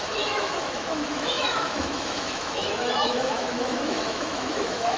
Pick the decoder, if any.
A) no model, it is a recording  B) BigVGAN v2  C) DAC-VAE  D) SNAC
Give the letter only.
C